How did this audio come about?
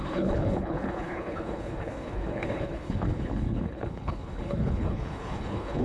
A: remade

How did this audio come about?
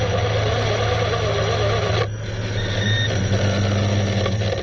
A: recorded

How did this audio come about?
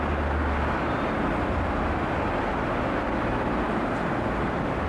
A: recorded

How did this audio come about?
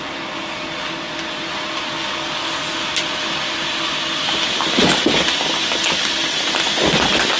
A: recorded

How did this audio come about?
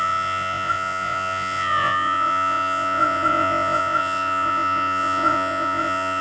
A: remade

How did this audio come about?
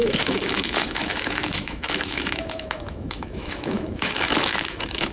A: remade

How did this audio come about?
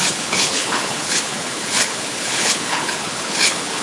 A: remade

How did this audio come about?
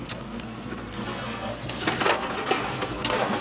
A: remade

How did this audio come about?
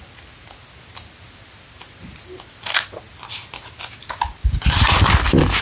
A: recorded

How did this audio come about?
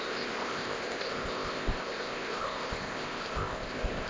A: remade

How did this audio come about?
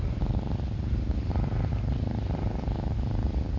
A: recorded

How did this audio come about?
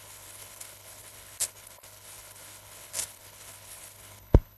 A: remade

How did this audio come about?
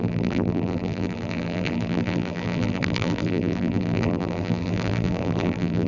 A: remade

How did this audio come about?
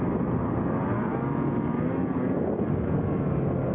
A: recorded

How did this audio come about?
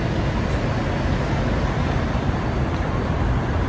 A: recorded